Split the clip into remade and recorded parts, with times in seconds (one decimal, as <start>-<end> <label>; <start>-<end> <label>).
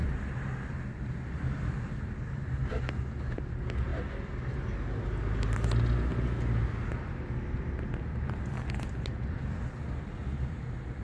0.0-11.0 recorded